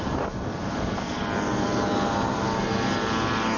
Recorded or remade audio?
recorded